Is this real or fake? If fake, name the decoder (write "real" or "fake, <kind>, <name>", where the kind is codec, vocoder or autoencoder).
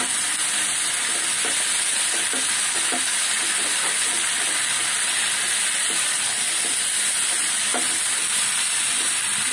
real